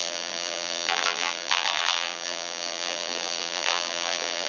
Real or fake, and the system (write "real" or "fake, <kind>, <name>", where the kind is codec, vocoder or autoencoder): fake, vocoder, BigVGAN v2